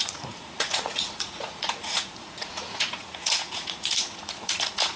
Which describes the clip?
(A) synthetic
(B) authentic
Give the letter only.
A